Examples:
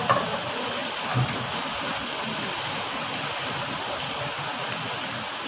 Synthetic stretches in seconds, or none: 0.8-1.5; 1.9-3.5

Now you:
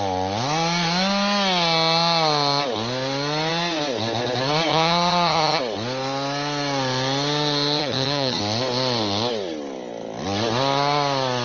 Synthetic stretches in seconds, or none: 4.7-5.6; 7.8-8.4

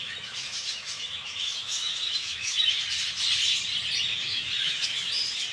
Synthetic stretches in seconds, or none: 0.0-2.8; 4.1-5.1